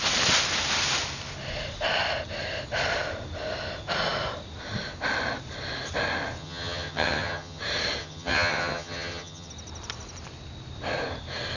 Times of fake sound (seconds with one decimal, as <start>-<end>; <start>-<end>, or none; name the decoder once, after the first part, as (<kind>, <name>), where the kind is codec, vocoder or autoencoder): 6.4-7.6 (vocoder, HiFi-GAN); 8.0-9.5